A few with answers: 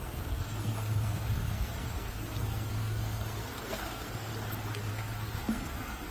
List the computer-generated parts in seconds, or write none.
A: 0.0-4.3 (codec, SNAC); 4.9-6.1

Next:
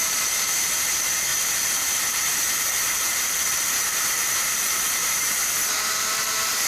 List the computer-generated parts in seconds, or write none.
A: 0.0-6.7 (vocoder, BigVGAN v2)

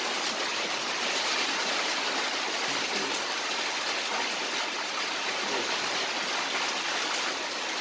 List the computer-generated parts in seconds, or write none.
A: 0.5-1.9 (vocoder, BigVGAN v2)

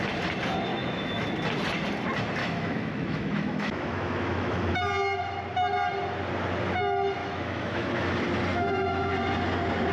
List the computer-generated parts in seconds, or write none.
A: 0.7-1.3 (autoencoder, DAC-VAE); 2.4-4.7; 7.2-8.1; 8.5-9.1

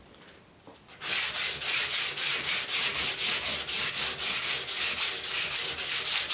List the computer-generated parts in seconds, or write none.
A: none

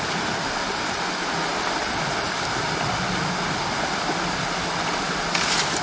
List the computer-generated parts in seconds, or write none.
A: none